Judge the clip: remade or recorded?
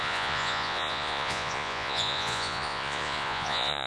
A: remade